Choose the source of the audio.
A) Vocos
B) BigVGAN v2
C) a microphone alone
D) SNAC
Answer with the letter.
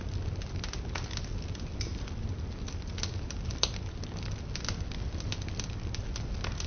C